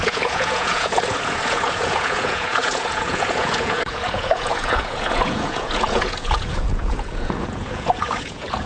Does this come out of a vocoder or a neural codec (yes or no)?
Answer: yes